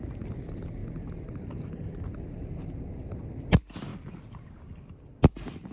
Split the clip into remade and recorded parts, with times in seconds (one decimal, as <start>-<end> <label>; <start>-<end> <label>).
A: 0.0-3.9 recorded; 3.9-5.2 remade; 5.2-5.7 recorded

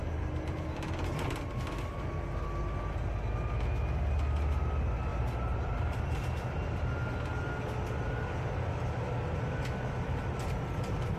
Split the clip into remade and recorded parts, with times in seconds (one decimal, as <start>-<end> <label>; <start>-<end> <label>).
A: 0.0-5.1 recorded; 5.1-6.0 remade; 6.0-11.2 recorded

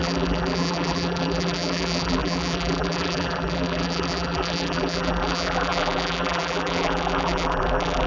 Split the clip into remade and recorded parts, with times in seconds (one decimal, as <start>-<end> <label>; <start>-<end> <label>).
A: 0.0-8.1 remade

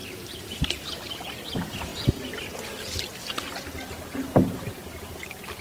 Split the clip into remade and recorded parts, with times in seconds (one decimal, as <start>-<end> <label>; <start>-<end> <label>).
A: 0.0-1.0 remade; 1.0-5.6 recorded

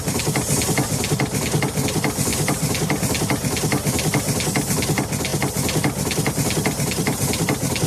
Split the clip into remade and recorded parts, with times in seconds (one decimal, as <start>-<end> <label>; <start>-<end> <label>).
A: 0.0-2.3 recorded; 2.3-3.0 remade; 3.0-7.9 recorded

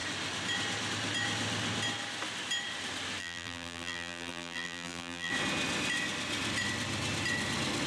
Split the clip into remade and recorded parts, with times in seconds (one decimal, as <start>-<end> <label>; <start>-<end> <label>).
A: 0.0-3.2 recorded; 3.2-5.3 remade; 5.3-7.9 recorded

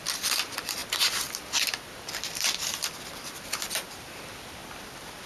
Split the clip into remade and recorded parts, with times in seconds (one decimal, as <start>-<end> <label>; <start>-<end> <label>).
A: 0.0-0.8 remade; 0.8-3.9 recorded; 3.9-4.6 remade; 4.6-5.3 recorded

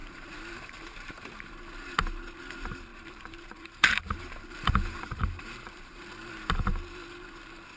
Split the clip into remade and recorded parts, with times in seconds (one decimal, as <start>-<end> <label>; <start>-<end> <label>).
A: 0.0-1.5 remade; 1.5-2.9 recorded; 2.9-6.1 remade; 6.1-7.8 recorded